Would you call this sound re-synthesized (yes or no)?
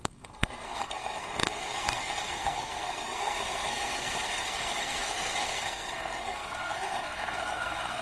yes